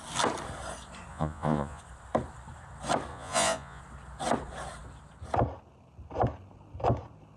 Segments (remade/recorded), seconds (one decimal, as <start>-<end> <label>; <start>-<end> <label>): 0.0-1.1 recorded; 1.1-1.8 remade; 1.8-3.1 recorded; 3.1-3.8 remade; 3.8-7.4 recorded